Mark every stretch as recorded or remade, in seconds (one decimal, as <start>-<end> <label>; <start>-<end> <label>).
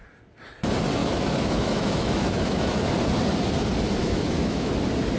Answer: 0.0-1.0 recorded; 1.0-2.9 remade; 2.9-4.0 recorded; 4.0-4.7 remade; 4.7-5.2 recorded